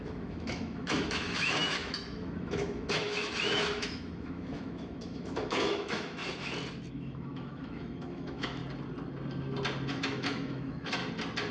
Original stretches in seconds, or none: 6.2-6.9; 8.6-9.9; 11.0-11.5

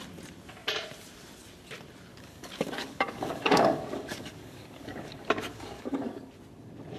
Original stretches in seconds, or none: 0.0-2.1; 6.3-7.0

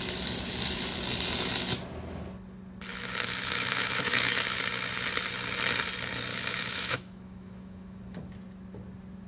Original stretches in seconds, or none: 0.0-2.9; 4.6-6.3; 8.0-9.3

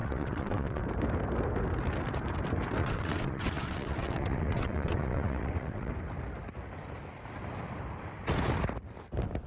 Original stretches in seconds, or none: 0.8-2.8; 5.9-9.5

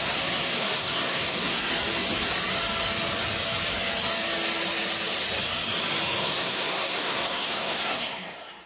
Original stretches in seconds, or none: 1.7-6.2

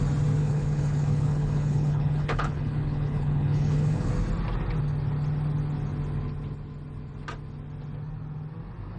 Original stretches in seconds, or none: 0.0-0.4; 4.1-9.0

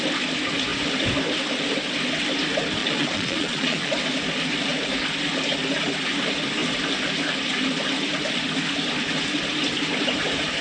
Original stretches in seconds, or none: 0.0-2.8; 3.9-10.6

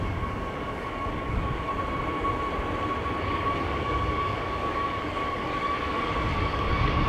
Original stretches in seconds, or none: 1.7-3.2